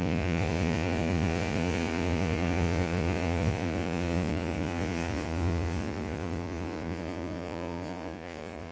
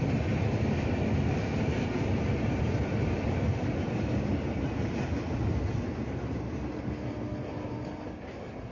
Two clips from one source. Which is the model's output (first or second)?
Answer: first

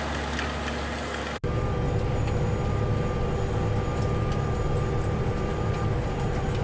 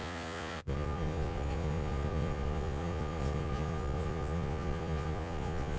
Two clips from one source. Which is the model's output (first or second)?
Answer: second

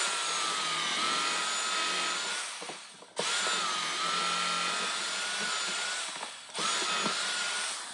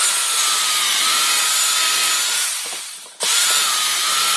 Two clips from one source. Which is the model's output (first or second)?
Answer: second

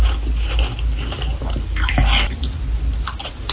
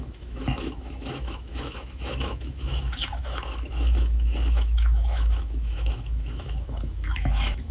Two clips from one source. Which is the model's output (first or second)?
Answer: second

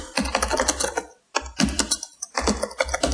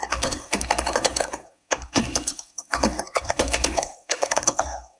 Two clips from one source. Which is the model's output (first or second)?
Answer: second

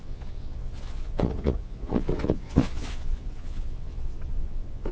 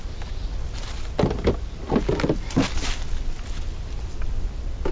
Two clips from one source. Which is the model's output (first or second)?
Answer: first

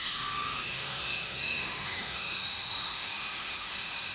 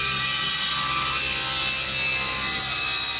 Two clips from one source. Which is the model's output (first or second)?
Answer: first